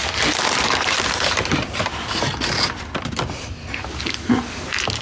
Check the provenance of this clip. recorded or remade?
recorded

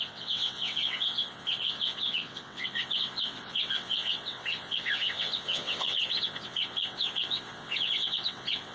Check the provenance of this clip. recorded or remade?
remade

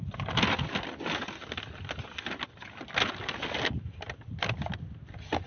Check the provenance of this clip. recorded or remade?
recorded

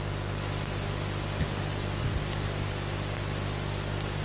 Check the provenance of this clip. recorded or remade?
recorded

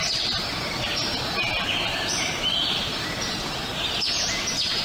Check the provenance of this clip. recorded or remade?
recorded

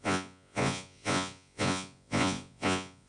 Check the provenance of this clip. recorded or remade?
remade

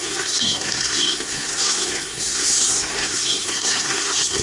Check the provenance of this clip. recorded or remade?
remade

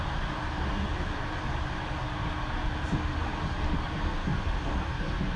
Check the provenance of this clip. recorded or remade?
recorded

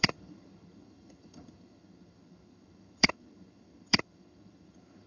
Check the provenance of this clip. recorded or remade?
remade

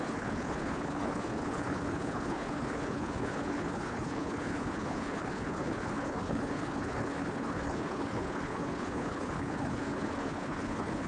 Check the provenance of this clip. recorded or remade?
remade